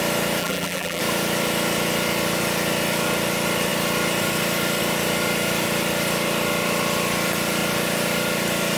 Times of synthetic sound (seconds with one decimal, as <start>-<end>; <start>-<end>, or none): 0.4-1.0

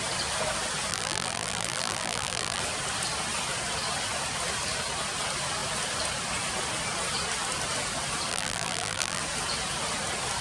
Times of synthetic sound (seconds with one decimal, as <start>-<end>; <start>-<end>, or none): 0.9-2.6; 8.3-9.2

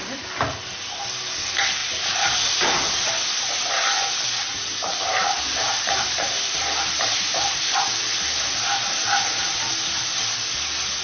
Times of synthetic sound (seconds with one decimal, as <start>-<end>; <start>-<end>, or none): 1.8-3.1; 4.5-9.0